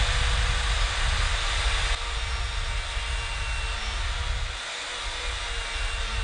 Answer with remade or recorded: recorded